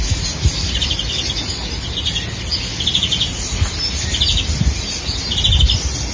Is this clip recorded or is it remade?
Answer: recorded